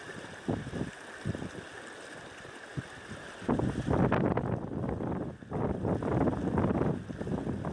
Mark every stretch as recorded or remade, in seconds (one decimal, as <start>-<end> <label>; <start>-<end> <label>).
0.0-7.7 recorded